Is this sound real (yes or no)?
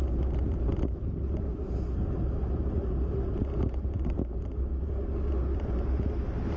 yes